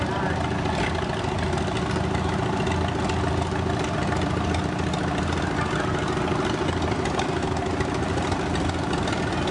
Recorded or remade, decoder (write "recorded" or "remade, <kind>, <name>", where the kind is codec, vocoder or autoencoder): recorded